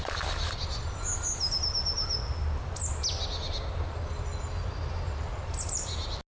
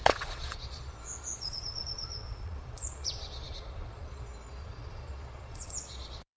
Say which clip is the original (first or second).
first